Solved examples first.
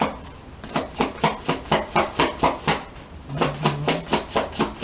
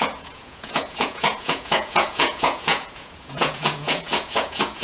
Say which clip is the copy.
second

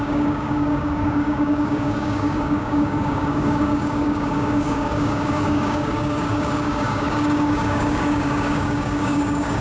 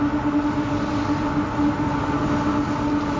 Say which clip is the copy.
first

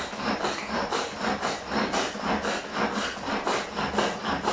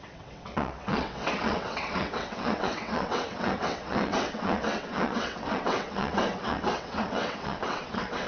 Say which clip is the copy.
second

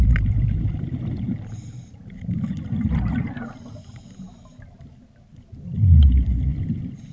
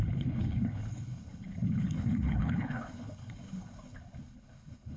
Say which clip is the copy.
second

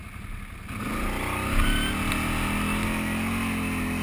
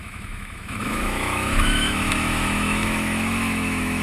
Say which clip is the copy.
second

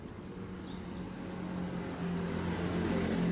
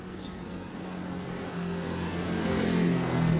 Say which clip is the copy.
second